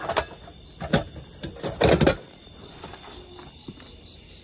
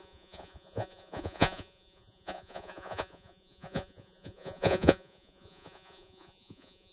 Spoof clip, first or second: second